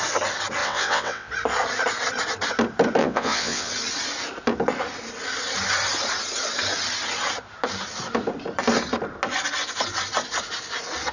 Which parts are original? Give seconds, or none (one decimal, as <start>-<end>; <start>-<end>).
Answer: 0.0-0.6; 1.3-3.0; 3.7-11.1